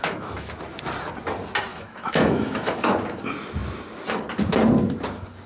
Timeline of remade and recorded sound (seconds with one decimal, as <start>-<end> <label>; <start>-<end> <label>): 0.0-0.5 remade; 0.5-1.7 recorded; 1.7-2.9 remade; 2.9-5.5 recorded